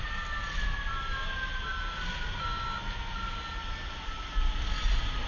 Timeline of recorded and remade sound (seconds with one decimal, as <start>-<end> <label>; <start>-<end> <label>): 0.0-5.3 recorded